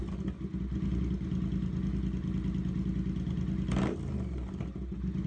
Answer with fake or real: real